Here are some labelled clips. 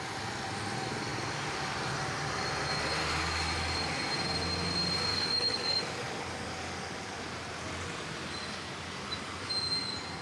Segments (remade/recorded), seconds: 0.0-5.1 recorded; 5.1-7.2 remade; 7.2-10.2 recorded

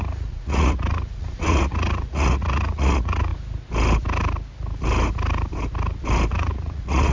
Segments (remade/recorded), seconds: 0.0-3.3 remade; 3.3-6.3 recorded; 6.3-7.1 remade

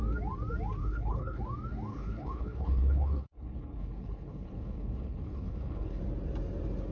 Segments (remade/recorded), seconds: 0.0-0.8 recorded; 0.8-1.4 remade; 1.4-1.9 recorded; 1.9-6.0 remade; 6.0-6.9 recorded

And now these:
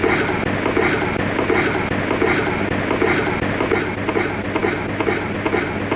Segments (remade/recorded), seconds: 0.0-6.0 recorded